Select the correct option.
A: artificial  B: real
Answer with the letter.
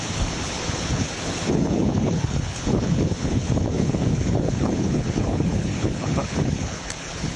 A